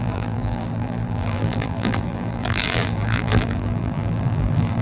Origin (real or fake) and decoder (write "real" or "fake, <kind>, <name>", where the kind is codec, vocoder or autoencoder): fake, vocoder, BigVGAN v2